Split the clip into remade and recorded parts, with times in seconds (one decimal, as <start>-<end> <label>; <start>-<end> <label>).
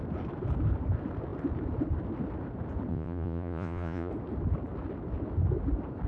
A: 0.0-2.9 recorded; 2.9-4.1 remade; 4.1-6.1 recorded